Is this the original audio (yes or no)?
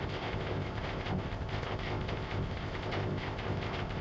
no